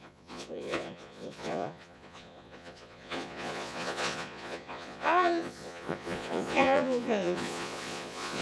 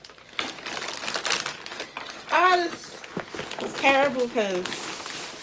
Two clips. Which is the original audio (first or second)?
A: second